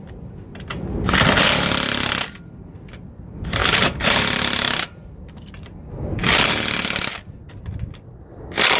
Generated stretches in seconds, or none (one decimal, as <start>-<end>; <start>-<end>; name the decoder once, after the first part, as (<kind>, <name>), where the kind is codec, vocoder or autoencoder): 3.6-5.7 (vocoder, BigVGAN v2)